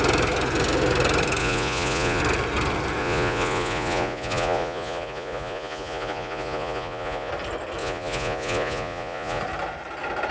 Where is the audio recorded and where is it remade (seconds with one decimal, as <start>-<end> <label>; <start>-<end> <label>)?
0.0-1.4 recorded; 1.4-2.2 remade; 2.2-3.0 recorded; 3.0-7.3 remade; 7.3-7.8 recorded; 7.8-9.4 remade; 9.4-10.3 recorded